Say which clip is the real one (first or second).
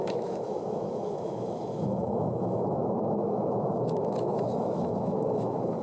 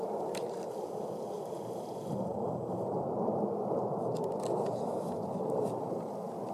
second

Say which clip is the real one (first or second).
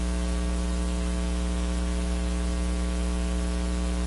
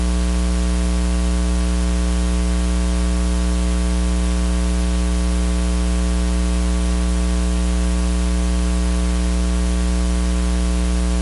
second